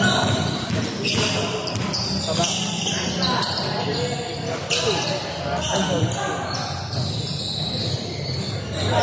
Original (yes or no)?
yes